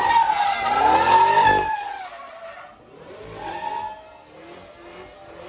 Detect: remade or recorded recorded